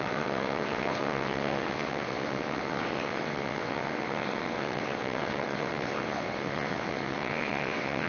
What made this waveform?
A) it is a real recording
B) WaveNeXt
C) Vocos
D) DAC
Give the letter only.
B